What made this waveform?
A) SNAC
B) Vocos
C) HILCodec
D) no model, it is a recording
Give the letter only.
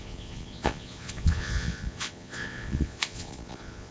B